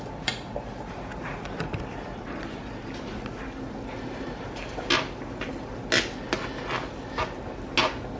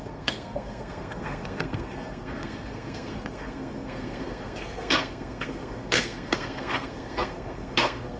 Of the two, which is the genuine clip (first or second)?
first